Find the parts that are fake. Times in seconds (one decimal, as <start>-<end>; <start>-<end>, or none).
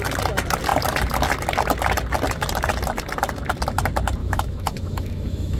4.2-5.6